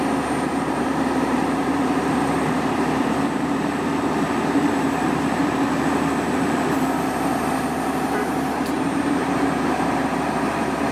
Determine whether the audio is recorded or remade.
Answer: remade